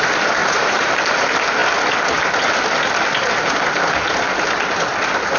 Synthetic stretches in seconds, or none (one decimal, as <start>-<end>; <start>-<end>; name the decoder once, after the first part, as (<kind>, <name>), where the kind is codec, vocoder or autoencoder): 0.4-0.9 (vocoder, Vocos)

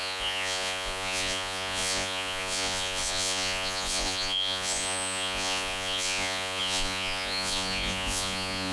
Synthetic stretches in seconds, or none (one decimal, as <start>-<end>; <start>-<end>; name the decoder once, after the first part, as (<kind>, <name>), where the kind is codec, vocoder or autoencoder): 0.0-8.7 (vocoder, Vocos)

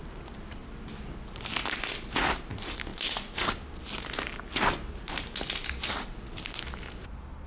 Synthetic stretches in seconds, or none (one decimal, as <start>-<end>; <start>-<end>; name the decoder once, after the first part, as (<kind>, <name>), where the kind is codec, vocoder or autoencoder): none

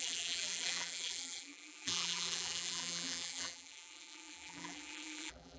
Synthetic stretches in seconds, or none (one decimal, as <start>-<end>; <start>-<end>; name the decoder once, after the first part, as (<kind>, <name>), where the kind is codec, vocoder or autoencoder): 0.0-5.6 (vocoder, BigVGAN v2)

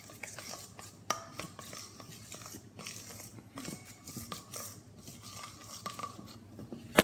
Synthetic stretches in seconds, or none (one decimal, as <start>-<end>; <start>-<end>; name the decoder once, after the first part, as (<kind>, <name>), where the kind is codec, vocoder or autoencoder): 3.3-4.1 (vocoder, BigVGAN v2); 6.0-7.0

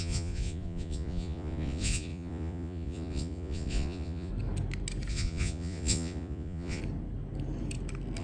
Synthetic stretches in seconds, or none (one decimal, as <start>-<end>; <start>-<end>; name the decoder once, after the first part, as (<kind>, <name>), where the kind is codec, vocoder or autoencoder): 0.0-4.3 (vocoder, Vocos); 5.1-6.8

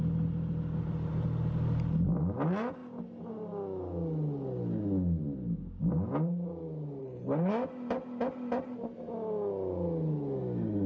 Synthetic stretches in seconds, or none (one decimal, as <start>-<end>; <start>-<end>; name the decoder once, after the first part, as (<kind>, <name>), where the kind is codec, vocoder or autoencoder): 7.0-7.5 (codec, HILCodec)

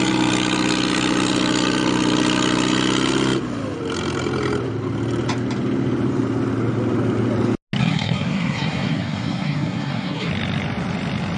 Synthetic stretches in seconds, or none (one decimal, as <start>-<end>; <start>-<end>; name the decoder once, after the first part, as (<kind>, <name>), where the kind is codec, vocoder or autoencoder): 7.8-10.3 (codec, SNAC)